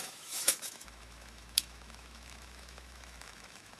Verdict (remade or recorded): remade